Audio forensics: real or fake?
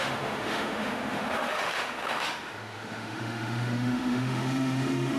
fake